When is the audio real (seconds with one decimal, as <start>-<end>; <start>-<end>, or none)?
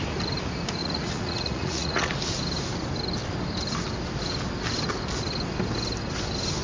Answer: 0.0-0.8; 2.1-6.6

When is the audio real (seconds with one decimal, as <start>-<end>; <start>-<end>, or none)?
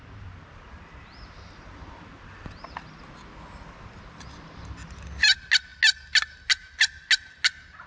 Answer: 0.0-7.9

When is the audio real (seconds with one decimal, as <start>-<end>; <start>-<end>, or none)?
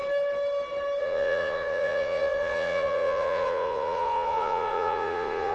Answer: 0.0-1.0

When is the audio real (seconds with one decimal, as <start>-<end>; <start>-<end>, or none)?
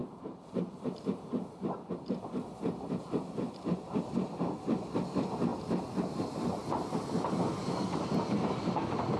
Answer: 1.9-5.5; 6.9-9.2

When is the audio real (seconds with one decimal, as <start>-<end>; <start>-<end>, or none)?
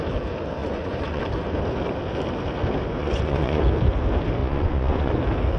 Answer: 0.0-0.6; 1.2-3.0; 3.6-4.4; 5.1-5.6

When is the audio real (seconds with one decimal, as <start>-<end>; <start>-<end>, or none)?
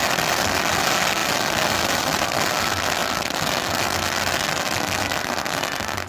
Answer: 0.0-1.2; 2.5-6.1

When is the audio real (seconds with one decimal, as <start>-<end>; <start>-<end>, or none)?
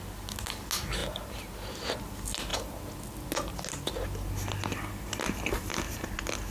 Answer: 0.0-6.5